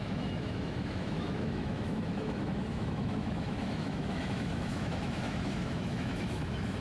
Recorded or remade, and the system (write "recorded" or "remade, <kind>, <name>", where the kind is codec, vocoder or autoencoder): remade, autoencoder, DAC-VAE